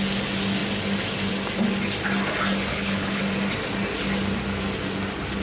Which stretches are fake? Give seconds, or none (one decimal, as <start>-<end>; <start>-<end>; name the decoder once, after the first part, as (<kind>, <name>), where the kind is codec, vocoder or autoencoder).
2.7-3.2 (codec, HILCodec)